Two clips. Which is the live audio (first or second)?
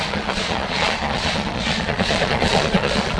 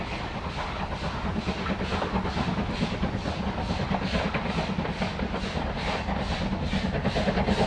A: second